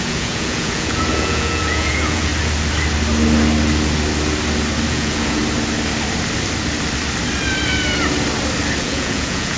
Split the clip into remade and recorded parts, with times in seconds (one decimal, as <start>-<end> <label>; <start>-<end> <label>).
0.0-2.3 remade; 2.3-4.9 recorded; 4.9-5.4 remade; 5.4-8.8 recorded; 8.8-9.6 remade